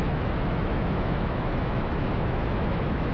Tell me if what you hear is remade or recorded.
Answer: remade